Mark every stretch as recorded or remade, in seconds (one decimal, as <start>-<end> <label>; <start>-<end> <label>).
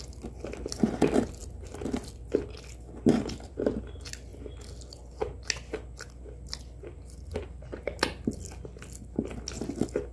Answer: 0.0-10.1 recorded